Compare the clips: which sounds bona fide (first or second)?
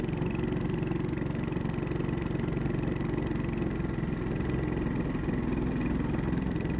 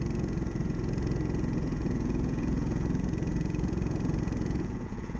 first